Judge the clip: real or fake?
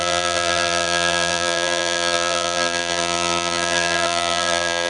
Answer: fake